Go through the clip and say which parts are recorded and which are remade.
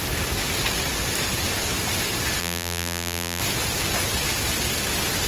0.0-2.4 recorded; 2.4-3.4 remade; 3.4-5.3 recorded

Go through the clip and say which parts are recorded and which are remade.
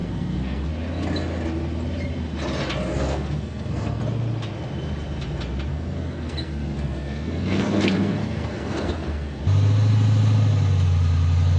0.0-0.7 remade; 0.7-2.9 recorded; 2.9-4.0 remade; 4.0-5.7 recorded; 5.7-9.4 remade; 9.4-11.6 recorded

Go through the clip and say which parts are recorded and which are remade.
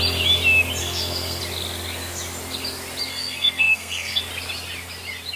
0.0-0.8 recorded; 0.8-1.4 remade; 1.4-3.1 recorded; 3.1-4.2 remade; 4.2-5.4 recorded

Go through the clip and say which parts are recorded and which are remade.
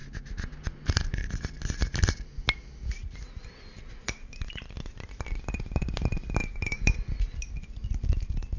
0.0-2.1 recorded; 2.1-8.6 remade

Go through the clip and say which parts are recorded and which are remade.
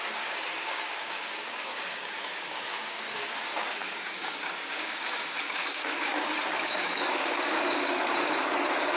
0.0-9.0 remade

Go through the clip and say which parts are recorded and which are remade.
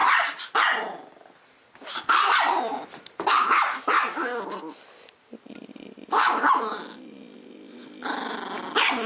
0.0-9.1 recorded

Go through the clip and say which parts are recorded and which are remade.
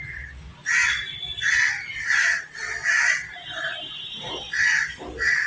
0.0-5.5 recorded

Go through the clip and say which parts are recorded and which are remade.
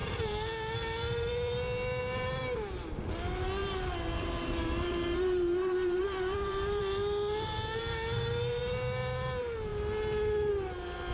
0.0-1.3 remade; 1.3-3.6 recorded; 3.6-8.6 remade; 8.6-11.1 recorded